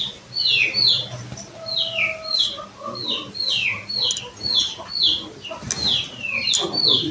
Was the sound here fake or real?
real